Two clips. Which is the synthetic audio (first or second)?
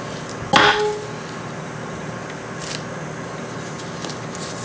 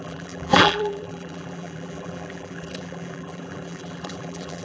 second